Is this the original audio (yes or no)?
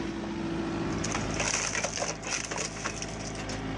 yes